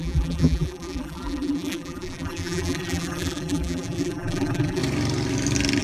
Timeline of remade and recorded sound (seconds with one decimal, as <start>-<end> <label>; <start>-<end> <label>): 0.0-4.8 remade; 4.8-5.8 recorded